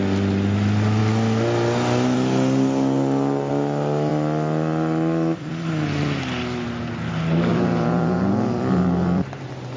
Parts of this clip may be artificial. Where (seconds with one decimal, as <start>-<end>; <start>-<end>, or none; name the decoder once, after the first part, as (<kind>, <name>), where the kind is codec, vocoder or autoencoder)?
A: 4.1-5.5 (vocoder, BigVGAN v2); 7.5-9.4